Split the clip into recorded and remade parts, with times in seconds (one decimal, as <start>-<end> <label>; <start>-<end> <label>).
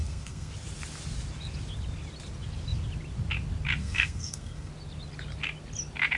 0.0-0.5 remade; 0.5-3.8 recorded; 3.8-4.7 remade; 4.7-6.2 recorded